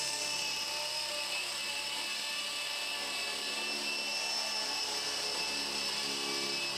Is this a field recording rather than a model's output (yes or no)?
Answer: yes